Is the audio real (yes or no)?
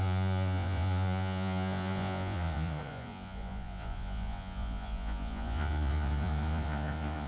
no